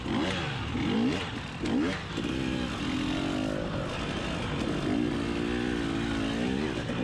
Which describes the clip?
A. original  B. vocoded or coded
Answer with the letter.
A